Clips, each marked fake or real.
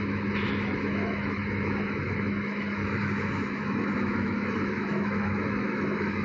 fake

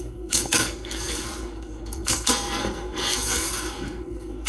fake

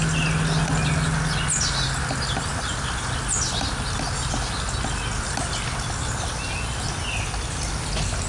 real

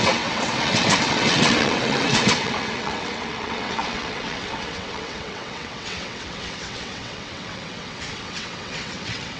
fake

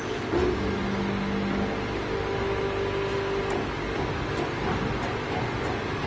real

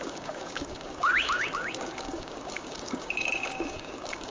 fake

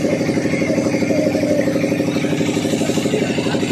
real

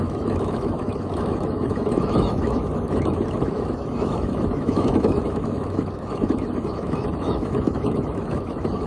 fake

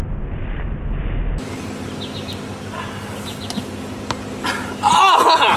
real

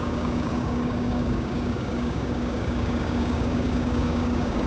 fake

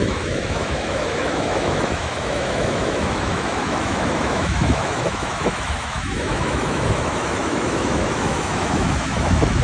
fake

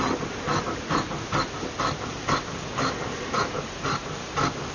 real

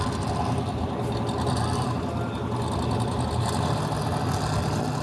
real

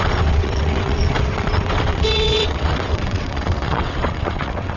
fake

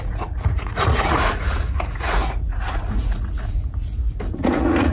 fake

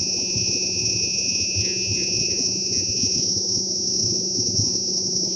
fake